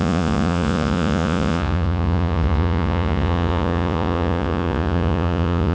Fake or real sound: fake